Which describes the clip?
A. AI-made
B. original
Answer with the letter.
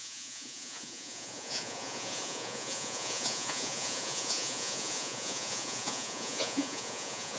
A